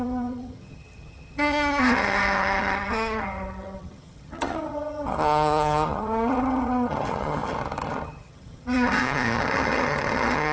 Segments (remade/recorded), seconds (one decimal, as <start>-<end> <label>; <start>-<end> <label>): 0.0-10.5 remade